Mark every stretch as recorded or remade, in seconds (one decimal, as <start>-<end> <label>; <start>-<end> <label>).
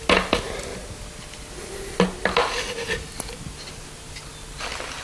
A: 0.0-5.0 recorded